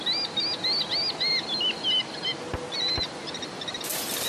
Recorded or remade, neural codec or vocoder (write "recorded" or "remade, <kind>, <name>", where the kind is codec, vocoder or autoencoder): recorded